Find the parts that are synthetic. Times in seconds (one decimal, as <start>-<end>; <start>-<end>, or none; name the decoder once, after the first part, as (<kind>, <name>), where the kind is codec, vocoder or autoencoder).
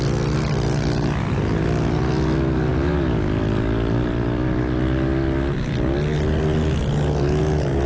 none